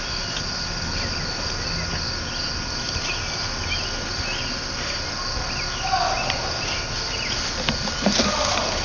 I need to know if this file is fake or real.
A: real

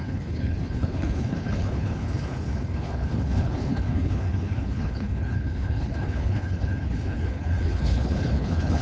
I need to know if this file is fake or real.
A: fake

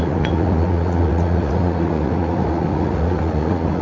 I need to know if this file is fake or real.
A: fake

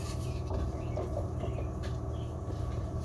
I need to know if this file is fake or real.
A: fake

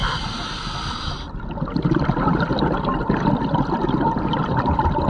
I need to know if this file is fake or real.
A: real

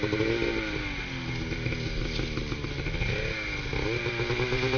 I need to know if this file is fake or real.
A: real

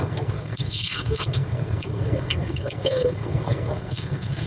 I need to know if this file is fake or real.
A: fake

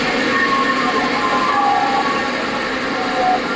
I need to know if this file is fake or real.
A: real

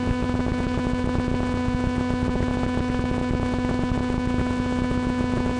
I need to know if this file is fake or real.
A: real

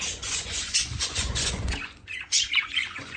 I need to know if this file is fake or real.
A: fake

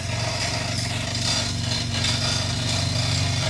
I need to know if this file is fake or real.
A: real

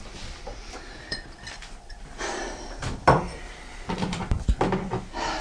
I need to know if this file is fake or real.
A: fake